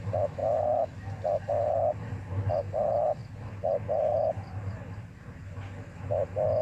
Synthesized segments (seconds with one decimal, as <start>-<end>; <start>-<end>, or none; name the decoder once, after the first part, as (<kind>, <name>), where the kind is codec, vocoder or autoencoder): none